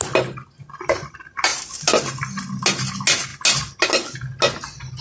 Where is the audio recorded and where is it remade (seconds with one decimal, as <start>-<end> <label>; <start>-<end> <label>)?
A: 0.0-5.0 recorded